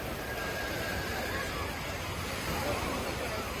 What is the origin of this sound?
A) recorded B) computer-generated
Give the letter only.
A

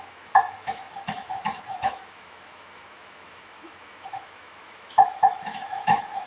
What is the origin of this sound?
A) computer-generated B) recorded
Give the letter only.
A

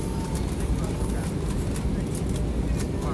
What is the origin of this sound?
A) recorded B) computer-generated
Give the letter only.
A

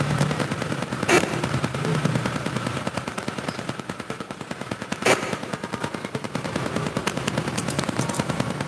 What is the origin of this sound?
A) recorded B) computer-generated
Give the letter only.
B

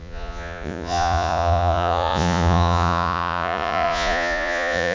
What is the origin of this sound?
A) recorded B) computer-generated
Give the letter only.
B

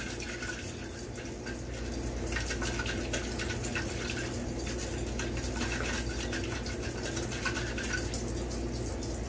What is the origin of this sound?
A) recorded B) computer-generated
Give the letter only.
A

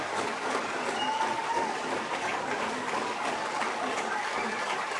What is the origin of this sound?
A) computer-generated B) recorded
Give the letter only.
A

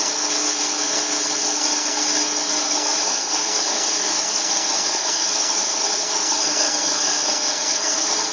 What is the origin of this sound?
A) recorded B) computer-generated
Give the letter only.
B